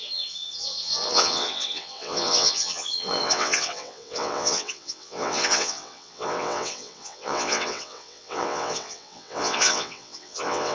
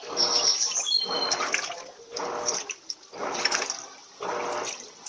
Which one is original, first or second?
second